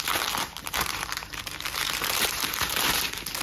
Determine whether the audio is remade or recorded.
remade